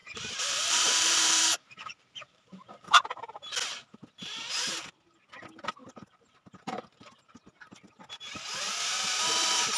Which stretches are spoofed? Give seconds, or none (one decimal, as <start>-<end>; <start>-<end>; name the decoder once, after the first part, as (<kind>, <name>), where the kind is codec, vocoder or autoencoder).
0.0-3.0 (vocoder, BigVGAN v2); 5.8-6.8